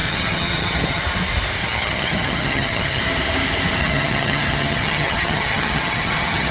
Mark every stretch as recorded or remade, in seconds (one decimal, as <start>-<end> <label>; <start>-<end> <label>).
0.0-1.0 remade; 1.0-1.6 recorded; 1.6-3.0 remade; 3.0-3.8 recorded; 3.8-6.5 remade

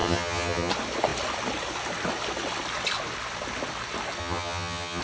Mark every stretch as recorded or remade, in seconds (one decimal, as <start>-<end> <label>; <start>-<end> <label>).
0.0-0.7 remade; 0.7-4.2 recorded; 4.2-5.0 remade

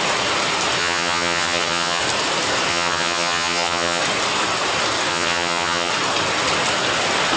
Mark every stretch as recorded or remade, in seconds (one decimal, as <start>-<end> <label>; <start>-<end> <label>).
0.0-0.8 recorded; 0.8-2.0 remade; 2.0-2.7 recorded; 2.7-4.0 remade; 4.0-5.1 recorded; 5.1-5.9 remade; 5.9-7.4 recorded

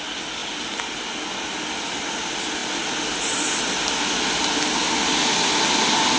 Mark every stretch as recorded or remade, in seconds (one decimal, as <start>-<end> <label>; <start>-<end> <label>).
0.0-6.2 recorded

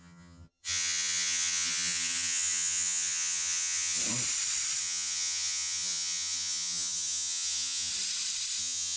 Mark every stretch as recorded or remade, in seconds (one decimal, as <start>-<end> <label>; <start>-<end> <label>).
0.0-4.0 remade; 4.0-4.8 recorded; 4.8-7.9 remade; 7.9-8.6 recorded; 8.6-9.0 remade

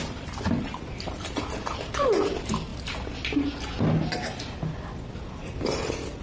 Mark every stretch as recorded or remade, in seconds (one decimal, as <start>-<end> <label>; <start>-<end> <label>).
0.0-6.2 recorded